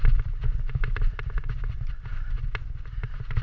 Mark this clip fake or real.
real